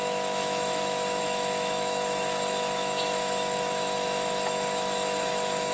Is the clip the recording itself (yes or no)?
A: no